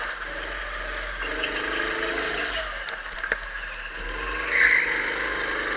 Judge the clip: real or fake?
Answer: real